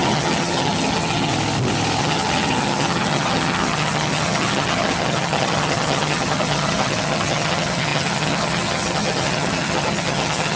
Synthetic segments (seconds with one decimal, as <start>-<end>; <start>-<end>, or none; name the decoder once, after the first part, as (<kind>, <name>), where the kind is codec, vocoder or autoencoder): 0.0-1.3 (vocoder, HiFi-GAN); 2.0-10.6